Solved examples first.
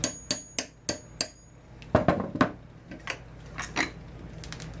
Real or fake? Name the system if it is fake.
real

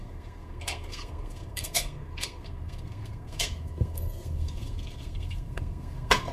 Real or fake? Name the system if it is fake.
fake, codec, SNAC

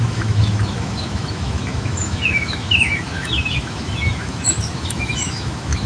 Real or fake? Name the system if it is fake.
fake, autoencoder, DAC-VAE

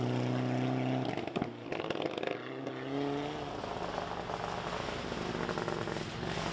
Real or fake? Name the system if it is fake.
real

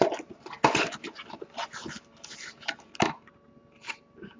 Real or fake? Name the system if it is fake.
real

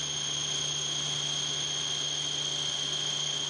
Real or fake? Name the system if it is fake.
real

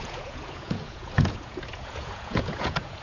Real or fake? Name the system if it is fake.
fake, vocoder, Vocos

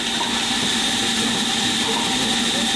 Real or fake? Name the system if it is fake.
real